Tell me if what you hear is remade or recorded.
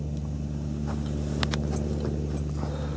recorded